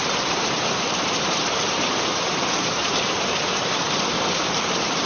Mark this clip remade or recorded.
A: remade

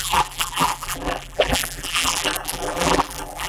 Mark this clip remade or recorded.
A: remade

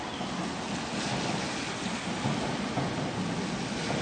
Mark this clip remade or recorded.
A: recorded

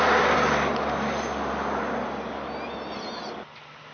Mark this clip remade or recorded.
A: recorded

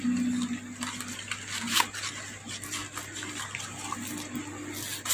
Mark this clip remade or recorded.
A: recorded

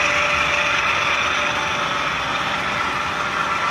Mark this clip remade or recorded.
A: recorded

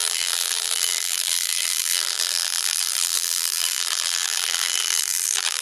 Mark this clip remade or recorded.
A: remade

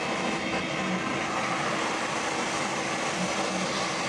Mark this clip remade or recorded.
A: recorded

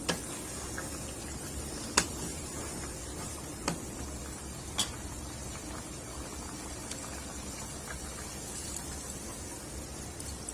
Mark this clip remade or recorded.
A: recorded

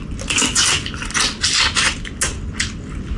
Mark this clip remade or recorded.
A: recorded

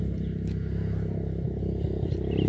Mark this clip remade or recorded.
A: recorded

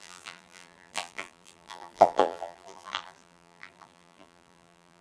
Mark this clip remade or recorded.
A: remade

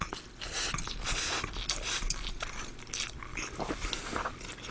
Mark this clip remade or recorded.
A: recorded